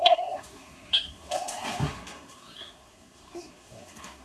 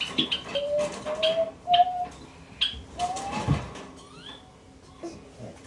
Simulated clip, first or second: first